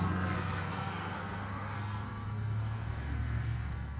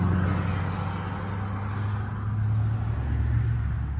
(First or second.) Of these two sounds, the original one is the second